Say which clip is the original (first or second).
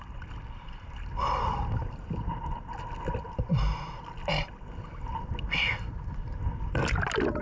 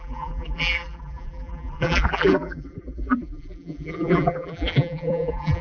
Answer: first